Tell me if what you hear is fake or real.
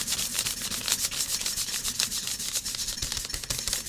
real